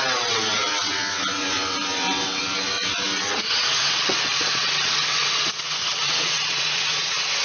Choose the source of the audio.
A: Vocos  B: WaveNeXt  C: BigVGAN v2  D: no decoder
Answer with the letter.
B